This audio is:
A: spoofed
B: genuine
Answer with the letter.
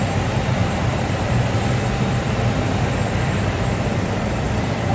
A